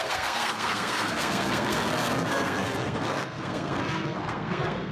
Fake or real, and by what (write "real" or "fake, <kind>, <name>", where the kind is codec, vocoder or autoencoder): fake, codec, SNAC